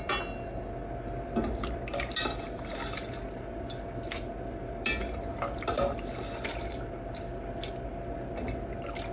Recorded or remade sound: recorded